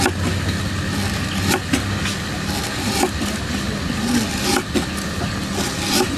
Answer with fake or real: real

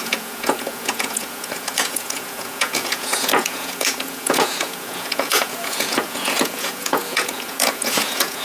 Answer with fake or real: fake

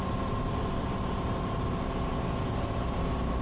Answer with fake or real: real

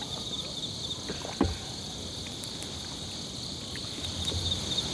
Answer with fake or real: real